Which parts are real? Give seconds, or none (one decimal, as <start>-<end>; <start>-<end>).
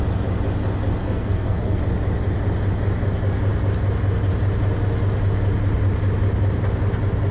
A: 0.0-1.0; 1.8-7.3